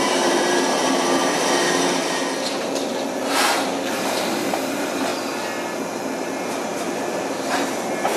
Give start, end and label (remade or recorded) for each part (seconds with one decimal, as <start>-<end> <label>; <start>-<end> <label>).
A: 0.0-5.1 remade; 5.1-5.9 recorded; 5.9-8.2 remade